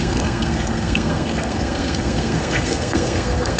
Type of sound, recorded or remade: remade